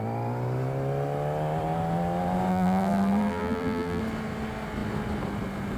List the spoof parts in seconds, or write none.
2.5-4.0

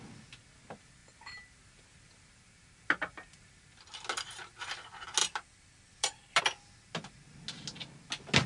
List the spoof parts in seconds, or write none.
5.2-6.4

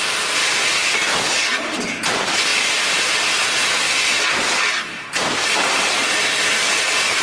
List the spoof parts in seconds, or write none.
none